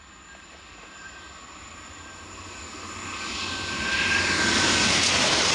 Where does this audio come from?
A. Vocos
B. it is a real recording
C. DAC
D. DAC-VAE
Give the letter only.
B